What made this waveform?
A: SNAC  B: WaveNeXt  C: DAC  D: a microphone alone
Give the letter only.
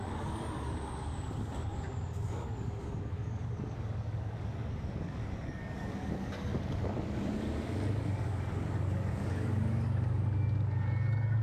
C